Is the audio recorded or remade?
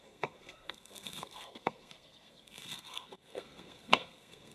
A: remade